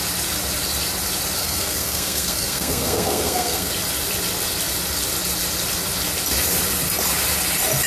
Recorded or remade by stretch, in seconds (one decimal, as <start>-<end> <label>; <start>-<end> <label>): 0.0-1.4 recorded; 1.4-3.7 remade; 3.7-7.9 recorded